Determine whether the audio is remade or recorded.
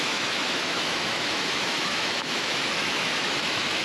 remade